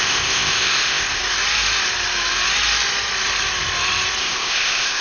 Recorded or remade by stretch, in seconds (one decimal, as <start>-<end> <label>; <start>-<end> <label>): 0.0-1.2 remade; 1.2-4.2 recorded; 4.2-5.0 remade